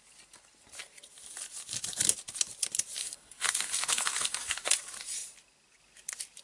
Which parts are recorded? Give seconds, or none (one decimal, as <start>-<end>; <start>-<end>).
0.0-3.0; 4.7-6.4